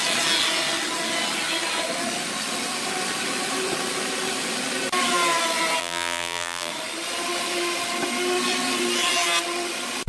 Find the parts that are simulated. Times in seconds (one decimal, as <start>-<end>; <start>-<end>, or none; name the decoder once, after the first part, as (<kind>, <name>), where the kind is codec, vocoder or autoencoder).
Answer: 5.8-6.7 (vocoder, BigVGAN v2)